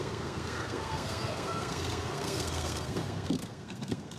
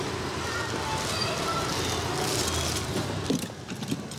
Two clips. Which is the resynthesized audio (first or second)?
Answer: first